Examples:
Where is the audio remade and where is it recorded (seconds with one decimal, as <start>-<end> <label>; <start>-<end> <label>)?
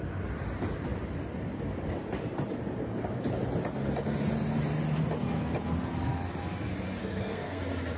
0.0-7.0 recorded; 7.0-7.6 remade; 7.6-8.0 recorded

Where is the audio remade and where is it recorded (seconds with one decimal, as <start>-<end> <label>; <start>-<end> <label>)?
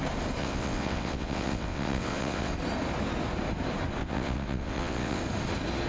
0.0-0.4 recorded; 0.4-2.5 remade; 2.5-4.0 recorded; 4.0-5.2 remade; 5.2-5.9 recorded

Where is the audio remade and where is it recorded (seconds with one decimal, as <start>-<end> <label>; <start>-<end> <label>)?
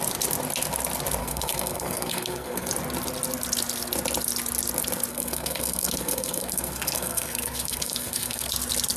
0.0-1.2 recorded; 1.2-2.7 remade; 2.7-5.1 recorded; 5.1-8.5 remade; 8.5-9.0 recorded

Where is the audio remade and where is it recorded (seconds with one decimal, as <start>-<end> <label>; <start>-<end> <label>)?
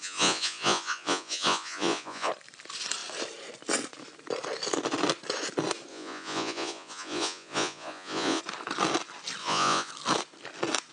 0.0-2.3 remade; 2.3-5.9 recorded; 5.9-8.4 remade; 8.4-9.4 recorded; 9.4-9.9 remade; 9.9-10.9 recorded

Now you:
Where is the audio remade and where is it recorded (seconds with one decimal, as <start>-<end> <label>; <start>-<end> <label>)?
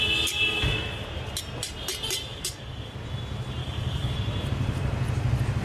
0.0-2.3 recorded; 2.3-2.9 remade; 2.9-3.6 recorded; 3.6-4.1 remade; 4.1-5.6 recorded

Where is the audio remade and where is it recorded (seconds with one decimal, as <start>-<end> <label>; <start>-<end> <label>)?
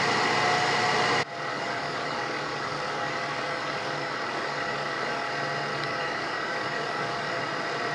0.0-1.5 recorded; 1.5-5.3 remade; 5.3-5.7 recorded; 5.7-7.4 remade; 7.4-7.9 recorded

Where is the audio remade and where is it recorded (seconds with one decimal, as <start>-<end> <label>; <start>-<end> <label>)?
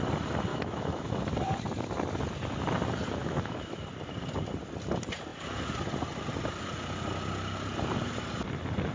0.0-0.5 recorded; 0.5-1.2 remade; 1.2-3.2 recorded; 3.2-3.7 remade; 3.7-8.9 recorded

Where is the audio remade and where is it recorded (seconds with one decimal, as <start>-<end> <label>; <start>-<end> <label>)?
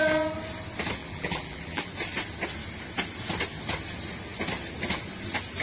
0.0-1.0 recorded; 1.0-1.9 remade; 1.9-5.6 recorded